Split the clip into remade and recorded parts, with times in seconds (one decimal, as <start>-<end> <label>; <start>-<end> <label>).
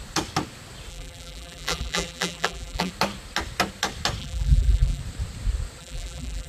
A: 0.0-0.9 recorded; 0.9-2.9 remade; 2.9-4.2 recorded; 4.2-5.0 remade; 5.0-5.8 recorded; 5.8-6.5 remade